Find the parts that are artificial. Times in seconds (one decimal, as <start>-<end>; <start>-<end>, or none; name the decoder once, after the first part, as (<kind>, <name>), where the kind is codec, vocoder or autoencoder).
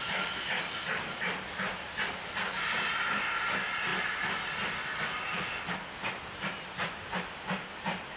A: none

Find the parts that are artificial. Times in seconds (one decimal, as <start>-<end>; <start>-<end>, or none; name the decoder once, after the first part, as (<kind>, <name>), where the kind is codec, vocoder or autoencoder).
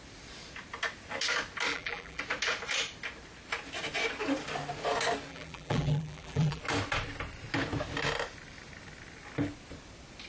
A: 1.7-2.2 (vocoder, BigVGAN v2); 5.3-6.6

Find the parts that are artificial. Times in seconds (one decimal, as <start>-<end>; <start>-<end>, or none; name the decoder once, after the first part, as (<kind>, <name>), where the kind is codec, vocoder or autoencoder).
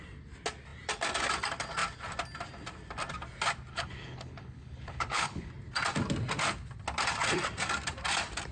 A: 3.7-5.5 (codec, HILCodec)